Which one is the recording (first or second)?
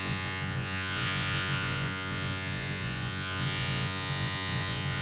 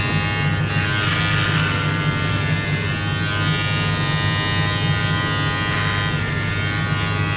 second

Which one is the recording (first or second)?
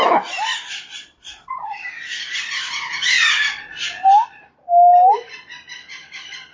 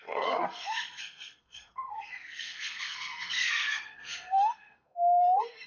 first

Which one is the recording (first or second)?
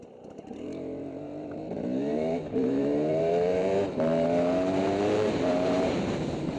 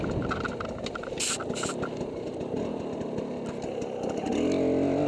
second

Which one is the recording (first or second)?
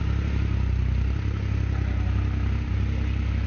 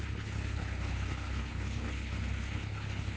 first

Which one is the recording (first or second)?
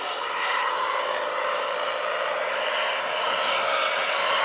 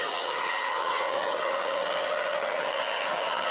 first